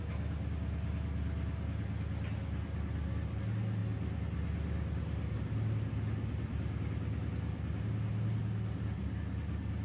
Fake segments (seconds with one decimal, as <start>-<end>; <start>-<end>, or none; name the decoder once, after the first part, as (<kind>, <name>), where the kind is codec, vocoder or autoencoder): none